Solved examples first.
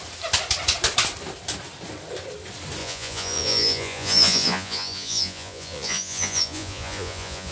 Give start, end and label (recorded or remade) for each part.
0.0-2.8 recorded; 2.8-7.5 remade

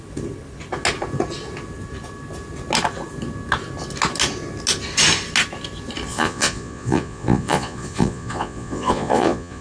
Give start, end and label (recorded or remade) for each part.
0.0-6.1 recorded; 6.1-9.6 remade